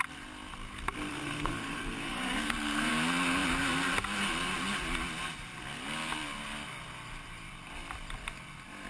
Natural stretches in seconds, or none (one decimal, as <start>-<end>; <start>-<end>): 0.0-1.1; 2.9-8.9